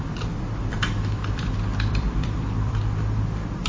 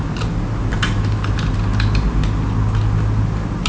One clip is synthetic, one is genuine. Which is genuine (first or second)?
second